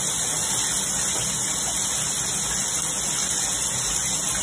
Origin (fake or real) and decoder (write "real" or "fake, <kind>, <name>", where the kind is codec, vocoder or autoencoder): real